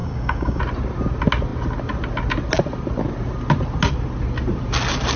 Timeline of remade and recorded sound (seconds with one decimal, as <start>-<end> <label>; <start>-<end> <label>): 0.0-0.6 remade; 0.6-5.2 recorded